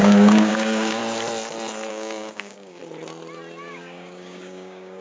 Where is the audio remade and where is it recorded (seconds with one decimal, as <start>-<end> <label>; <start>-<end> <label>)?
0.0-1.0 remade; 1.0-1.9 recorded; 1.9-2.8 remade; 2.8-3.7 recorded; 3.7-5.0 remade